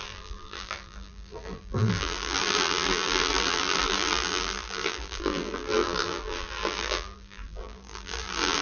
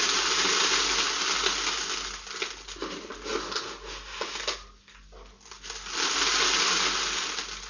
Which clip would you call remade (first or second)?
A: first